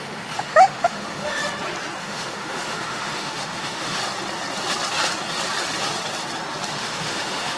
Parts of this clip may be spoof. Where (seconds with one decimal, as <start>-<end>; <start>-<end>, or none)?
0.0-1.4; 2.0-4.0; 6.7-7.6